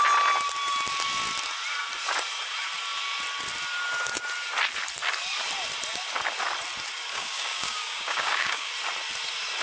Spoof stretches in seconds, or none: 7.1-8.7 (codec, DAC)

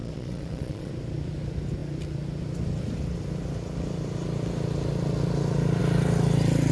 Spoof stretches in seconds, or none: 0.0-0.9 (vocoder, Vocos)

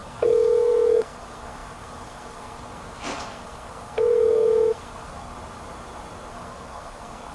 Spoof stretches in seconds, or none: 0.0-5.3 (codec, SNAC); 6.3-7.3

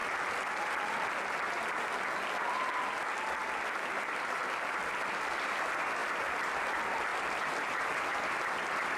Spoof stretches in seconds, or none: 3.4-5.5 (vocoder, BigVGAN v2); 6.0-6.6; 7.1-9.0

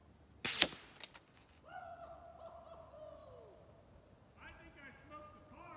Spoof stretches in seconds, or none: 1.3-2.3 (vocoder, Vocos); 2.8-3.2; 5.3-5.8

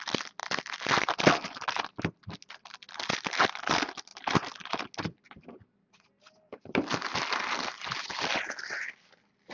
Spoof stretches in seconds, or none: none